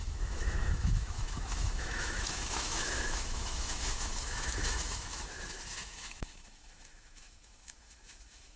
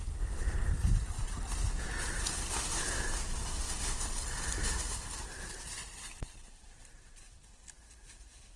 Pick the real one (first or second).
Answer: second